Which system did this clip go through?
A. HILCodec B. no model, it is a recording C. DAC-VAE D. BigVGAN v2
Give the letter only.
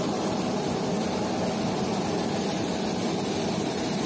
B